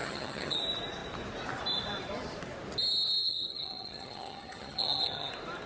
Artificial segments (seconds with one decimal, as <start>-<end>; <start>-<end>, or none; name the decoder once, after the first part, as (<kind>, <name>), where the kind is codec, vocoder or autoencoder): 0.0-0.6 (vocoder, HiFi-GAN); 3.2-5.3